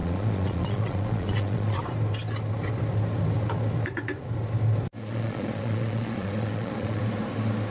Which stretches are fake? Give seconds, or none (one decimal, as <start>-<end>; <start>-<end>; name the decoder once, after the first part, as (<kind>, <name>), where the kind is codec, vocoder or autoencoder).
0.0-1.8 (vocoder, Vocos); 5.0-7.0